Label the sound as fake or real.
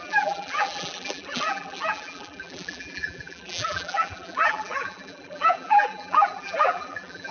fake